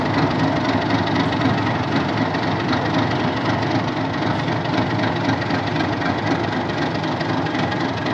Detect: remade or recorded recorded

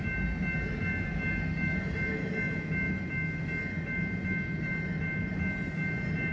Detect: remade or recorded recorded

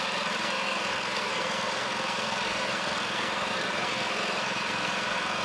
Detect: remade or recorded remade